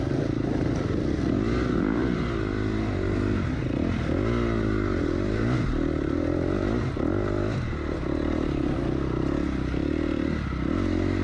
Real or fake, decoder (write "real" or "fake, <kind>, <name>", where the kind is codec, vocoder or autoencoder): real